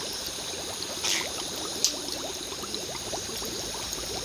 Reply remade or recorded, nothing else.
remade